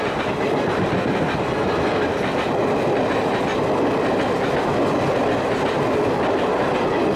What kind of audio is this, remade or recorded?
recorded